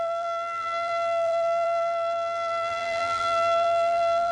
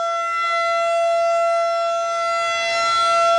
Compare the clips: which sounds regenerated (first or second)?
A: first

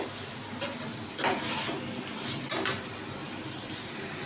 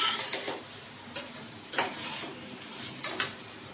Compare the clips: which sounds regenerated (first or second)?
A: second